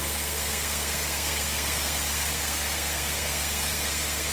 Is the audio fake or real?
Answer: fake